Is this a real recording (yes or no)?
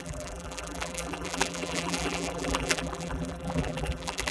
no